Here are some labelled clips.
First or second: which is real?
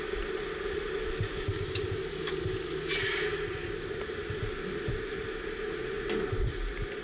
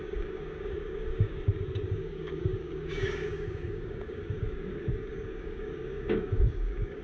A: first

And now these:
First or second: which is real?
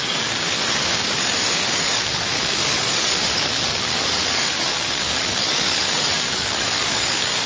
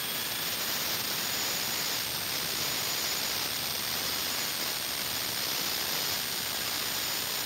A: second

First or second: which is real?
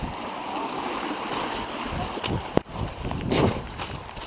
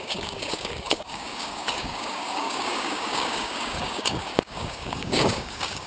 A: first